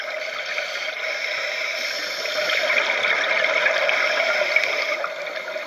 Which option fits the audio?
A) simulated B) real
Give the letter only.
A